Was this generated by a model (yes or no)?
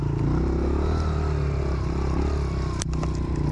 no